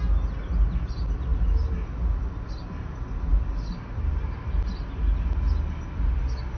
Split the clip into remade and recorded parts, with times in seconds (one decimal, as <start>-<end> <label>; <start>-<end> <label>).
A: 0.0-6.6 recorded